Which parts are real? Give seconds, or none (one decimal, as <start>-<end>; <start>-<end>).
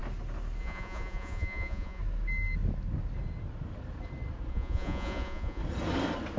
0.0-0.6; 2.0-4.5; 5.6-6.4